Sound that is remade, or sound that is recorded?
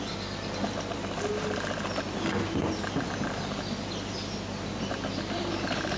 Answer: recorded